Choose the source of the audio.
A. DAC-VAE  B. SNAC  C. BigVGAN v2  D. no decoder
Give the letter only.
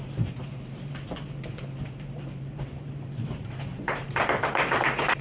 C